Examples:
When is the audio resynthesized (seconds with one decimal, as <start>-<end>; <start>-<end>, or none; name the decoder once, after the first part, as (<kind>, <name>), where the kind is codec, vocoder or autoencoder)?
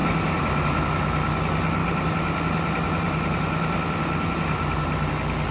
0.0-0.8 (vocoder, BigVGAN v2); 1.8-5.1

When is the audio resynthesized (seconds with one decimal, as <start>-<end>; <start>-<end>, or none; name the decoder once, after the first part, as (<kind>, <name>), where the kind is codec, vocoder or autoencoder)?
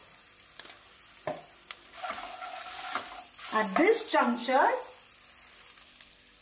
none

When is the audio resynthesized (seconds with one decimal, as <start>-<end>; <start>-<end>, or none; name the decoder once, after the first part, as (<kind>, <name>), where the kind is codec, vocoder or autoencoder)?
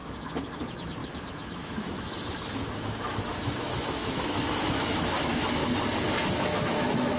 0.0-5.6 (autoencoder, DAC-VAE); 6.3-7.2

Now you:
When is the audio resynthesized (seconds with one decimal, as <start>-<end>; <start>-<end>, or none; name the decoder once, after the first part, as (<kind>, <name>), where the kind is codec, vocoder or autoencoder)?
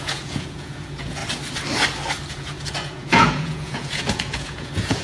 0.0-1.2 (vocoder, Vocos); 2.3-5.0